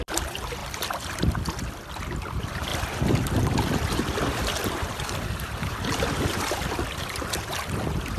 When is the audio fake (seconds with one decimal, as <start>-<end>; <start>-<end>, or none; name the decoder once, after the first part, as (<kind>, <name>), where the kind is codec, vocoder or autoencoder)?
0.0-2.7 (vocoder, BigVGAN v2); 3.4-8.2